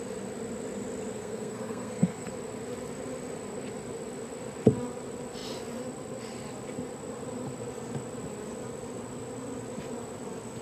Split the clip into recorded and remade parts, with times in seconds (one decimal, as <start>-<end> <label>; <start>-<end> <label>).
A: 0.0-1.1 recorded; 1.1-2.3 remade; 2.3-10.6 recorded